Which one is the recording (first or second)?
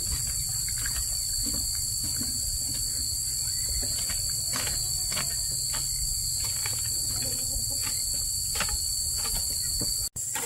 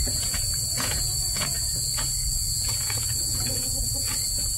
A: first